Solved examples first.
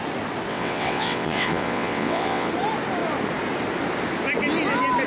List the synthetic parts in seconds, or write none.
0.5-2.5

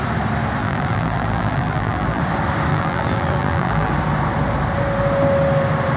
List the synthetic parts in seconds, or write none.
0.6-2.2; 2.7-3.9

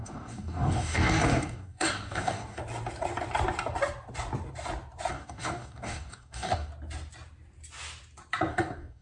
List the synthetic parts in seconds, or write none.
0.0-2.6; 5.1-6.7; 8.5-9.0

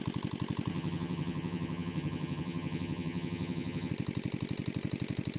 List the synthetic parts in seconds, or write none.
0.7-3.9

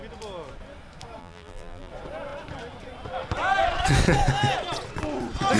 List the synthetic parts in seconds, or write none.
1.2-1.9

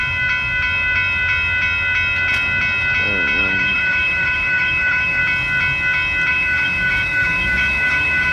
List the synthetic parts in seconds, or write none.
3.4-5.2; 6.3-8.3

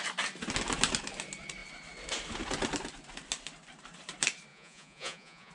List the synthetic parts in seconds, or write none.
4.5-5.5

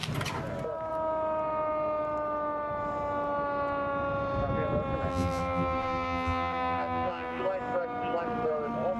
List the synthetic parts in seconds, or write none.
5.1-7.4